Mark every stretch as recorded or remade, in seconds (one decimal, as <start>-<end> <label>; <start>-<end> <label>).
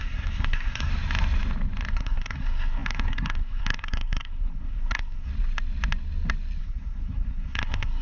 0.0-0.9 remade; 0.9-1.9 recorded; 1.9-5.3 remade; 5.3-6.6 recorded; 6.6-8.0 remade